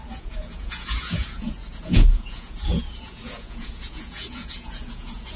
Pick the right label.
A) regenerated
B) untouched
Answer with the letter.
A